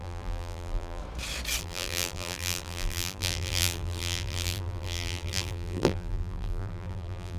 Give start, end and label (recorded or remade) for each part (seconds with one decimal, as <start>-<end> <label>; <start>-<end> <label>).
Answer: 0.0-1.0 remade; 1.0-1.6 recorded; 1.6-7.4 remade

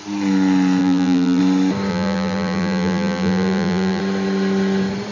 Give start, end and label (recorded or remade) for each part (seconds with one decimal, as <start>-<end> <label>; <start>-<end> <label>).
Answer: 0.0-0.8 recorded; 0.8-1.4 remade; 1.4-1.9 recorded; 1.9-4.0 remade; 4.0-5.1 recorded

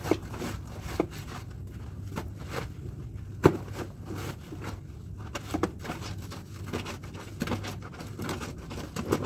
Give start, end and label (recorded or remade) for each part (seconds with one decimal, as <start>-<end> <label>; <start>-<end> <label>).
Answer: 0.0-2.1 recorded; 2.1-3.0 remade; 3.0-9.3 recorded